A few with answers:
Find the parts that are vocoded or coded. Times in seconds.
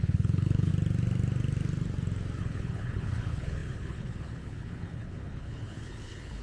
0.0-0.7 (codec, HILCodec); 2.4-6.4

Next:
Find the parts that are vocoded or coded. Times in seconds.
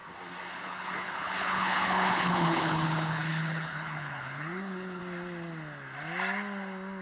0.5-5.0 (codec, HILCodec)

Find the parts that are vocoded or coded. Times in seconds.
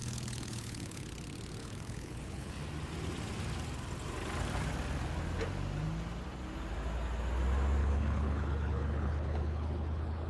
0.0-1.1 (codec, HILCodec); 1.6-2.5; 7.8-10.3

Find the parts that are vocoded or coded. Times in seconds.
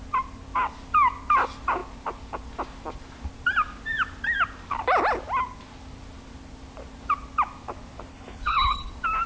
8.1-8.9 (codec, HILCodec)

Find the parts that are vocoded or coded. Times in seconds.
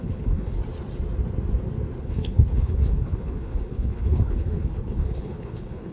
0.0-0.6 (codec, HILCodec); 2.0-5.9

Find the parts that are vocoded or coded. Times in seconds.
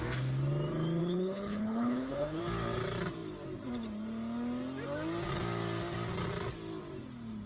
1.0-2.4 (codec, HILCodec)